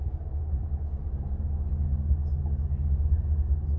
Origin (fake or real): real